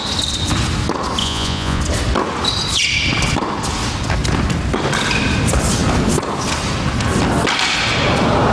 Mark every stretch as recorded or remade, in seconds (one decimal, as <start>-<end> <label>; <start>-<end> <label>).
0.0-1.2 recorded; 1.2-1.8 remade; 1.8-8.5 recorded